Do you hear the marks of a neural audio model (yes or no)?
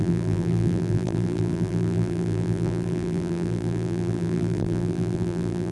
yes